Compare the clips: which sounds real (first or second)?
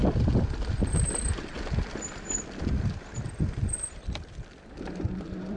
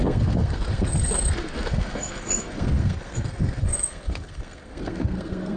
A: first